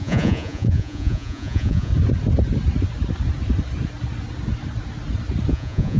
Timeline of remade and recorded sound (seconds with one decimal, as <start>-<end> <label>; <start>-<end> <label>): 0.0-1.9 remade; 1.9-5.5 recorded; 5.5-6.0 remade